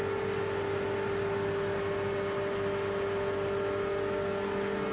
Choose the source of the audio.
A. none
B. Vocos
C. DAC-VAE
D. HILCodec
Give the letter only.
A